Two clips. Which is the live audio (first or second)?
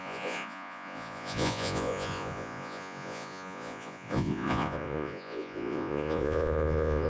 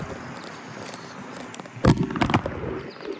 second